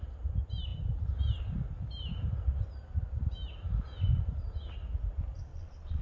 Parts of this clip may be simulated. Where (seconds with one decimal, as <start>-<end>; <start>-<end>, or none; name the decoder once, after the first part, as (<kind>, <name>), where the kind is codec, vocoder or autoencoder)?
5.5-6.0 (vocoder, Vocos)